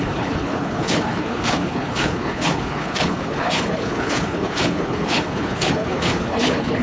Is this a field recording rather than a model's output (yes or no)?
no